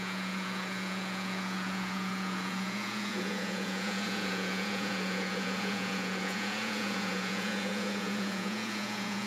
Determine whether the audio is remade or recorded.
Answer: remade